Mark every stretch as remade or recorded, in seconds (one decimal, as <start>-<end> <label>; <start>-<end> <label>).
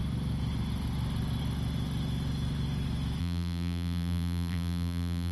0.0-3.2 recorded; 3.2-5.3 remade